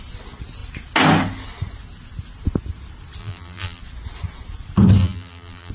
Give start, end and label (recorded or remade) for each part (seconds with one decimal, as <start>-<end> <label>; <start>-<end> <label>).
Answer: 0.0-3.2 recorded; 3.2-3.8 remade; 3.8-5.0 recorded; 5.0-5.7 remade